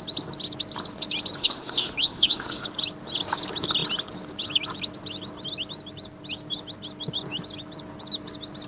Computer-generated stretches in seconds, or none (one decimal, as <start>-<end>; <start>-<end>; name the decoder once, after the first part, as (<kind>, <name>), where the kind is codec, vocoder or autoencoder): 1.4-2.6 (autoencoder, DAC-VAE)